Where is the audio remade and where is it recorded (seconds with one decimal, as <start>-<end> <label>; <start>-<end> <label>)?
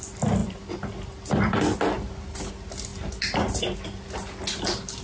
0.0-5.0 recorded